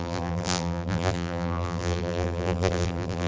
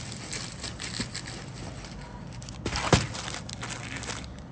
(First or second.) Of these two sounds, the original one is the second